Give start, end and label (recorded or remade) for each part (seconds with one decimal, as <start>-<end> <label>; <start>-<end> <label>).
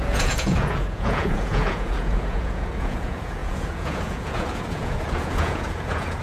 0.0-6.2 remade